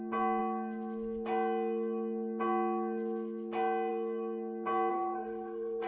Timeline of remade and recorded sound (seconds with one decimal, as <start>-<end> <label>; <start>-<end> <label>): 0.0-4.9 recorded; 4.9-5.9 remade